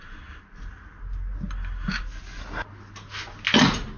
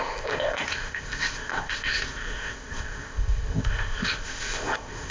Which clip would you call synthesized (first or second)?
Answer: second